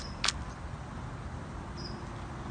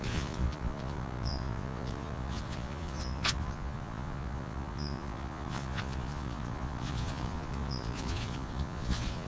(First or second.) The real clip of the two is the first